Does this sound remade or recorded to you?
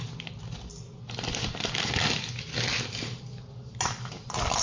recorded